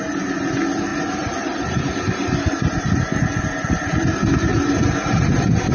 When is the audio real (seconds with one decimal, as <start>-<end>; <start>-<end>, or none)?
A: 0.0-0.9; 2.0-4.5; 5.3-5.7